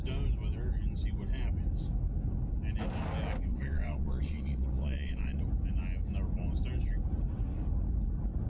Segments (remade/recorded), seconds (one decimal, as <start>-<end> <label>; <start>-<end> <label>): 0.0-3.5 recorded; 3.5-5.4 remade; 5.4-8.5 recorded